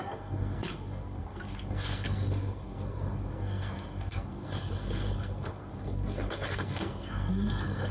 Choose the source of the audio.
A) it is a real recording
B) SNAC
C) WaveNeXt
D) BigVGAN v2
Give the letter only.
B